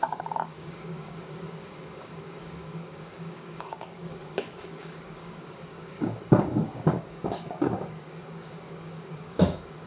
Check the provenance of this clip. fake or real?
fake